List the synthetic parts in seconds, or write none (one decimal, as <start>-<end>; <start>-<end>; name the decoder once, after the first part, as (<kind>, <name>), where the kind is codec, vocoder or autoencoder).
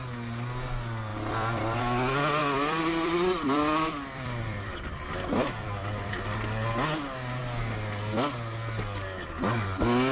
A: 1.1-1.8 (vocoder, BigVGAN v2); 2.4-6.1